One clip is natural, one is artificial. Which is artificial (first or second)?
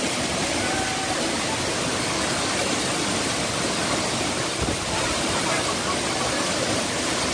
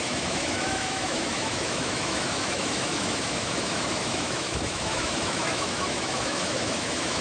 second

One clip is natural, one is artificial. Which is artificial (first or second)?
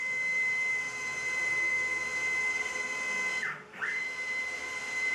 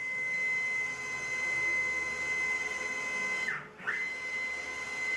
first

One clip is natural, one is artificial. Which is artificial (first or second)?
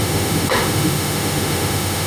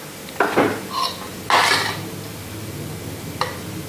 first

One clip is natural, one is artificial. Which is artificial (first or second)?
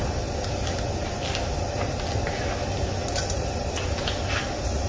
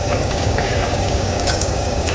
second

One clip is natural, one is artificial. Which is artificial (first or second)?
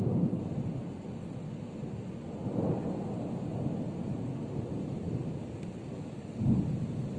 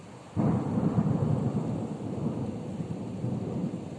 second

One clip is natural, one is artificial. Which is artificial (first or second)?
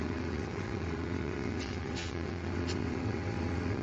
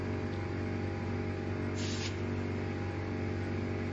first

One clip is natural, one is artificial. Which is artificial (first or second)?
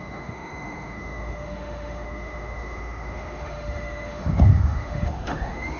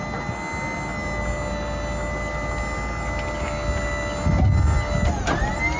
first